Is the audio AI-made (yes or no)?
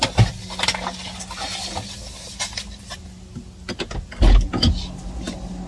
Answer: no